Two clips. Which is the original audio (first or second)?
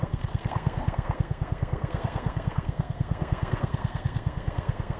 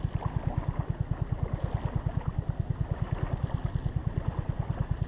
second